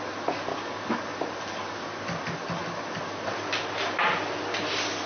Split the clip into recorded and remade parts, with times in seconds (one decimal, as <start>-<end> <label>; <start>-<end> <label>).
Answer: 0.0-5.1 recorded